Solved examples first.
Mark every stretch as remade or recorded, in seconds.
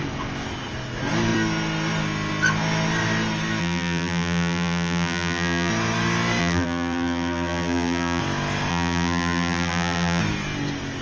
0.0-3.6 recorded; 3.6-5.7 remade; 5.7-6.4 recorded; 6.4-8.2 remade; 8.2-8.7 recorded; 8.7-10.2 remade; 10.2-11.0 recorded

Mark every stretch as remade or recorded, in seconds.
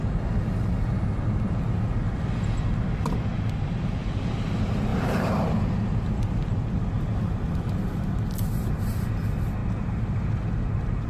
0.0-4.9 recorded; 4.9-5.8 remade; 5.8-9.6 recorded; 9.6-10.3 remade; 10.3-11.1 recorded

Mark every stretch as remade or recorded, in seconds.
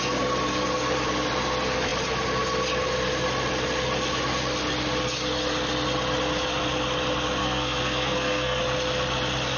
0.0-7.4 recorded; 7.4-8.6 remade; 8.6-9.6 recorded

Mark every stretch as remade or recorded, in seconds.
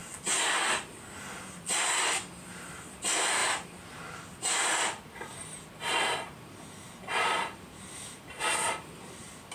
0.0-2.5 recorded; 2.5-3.4 remade; 3.4-7.0 recorded; 7.0-9.5 remade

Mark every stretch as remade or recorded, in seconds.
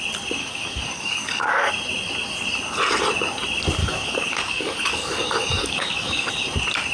0.0-0.4 recorded; 0.4-1.7 remade; 1.7-3.8 recorded; 3.8-6.3 remade; 6.3-6.9 recorded